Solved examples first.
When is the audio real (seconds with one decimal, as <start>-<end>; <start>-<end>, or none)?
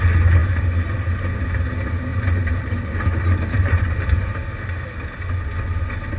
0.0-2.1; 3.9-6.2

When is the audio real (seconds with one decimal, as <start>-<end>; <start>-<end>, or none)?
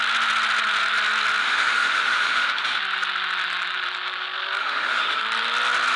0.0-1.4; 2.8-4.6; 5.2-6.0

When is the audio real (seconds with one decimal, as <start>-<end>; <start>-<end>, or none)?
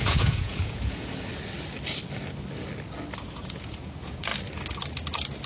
1.3-3.2; 4.3-5.5